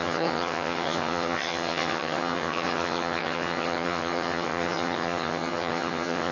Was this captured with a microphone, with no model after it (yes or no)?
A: no